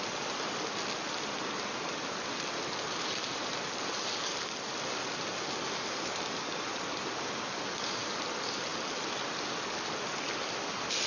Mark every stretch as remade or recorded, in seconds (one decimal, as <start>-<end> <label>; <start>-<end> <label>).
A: 0.0-11.1 recorded